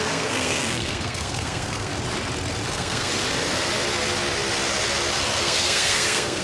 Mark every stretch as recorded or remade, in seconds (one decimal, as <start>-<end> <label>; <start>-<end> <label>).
0.0-1.9 remade; 1.9-2.7 recorded; 2.7-3.1 remade; 3.1-5.4 recorded; 5.4-6.4 remade